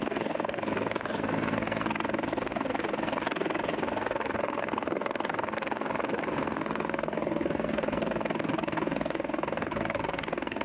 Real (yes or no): no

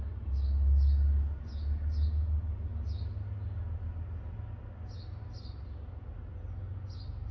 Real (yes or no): yes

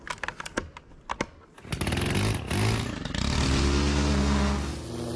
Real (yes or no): yes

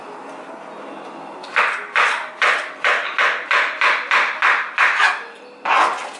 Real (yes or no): yes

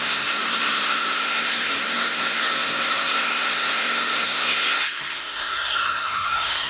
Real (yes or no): no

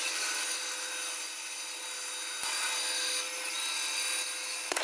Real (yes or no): yes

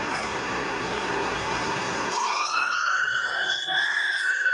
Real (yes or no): no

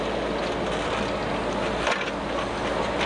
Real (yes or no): yes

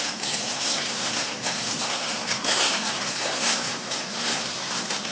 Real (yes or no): no